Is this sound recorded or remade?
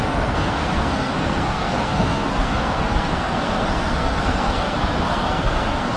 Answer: remade